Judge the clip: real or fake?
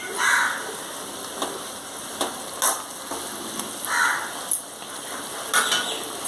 real